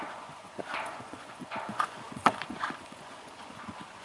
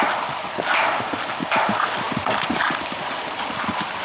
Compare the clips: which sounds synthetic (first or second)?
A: first